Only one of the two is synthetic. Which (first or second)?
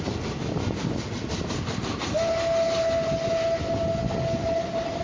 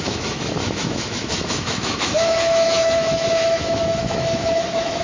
second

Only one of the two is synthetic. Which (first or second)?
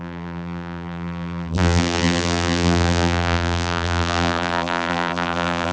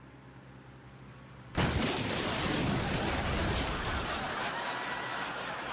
first